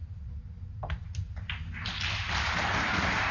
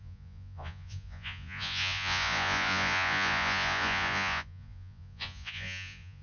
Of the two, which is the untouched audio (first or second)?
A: first